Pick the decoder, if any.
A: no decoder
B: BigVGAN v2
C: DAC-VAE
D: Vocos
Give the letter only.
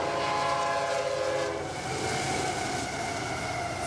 A